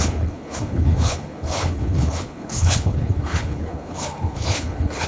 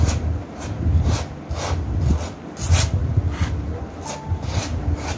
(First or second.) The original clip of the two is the second